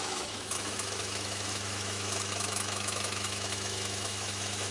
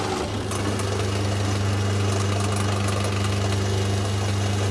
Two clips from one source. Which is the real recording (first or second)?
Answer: second